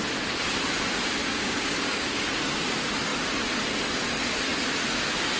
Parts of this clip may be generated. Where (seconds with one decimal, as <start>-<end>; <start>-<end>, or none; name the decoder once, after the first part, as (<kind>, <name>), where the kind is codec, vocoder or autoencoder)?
1.2-2.4 (codec, DAC)